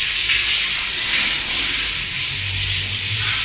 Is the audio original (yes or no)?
yes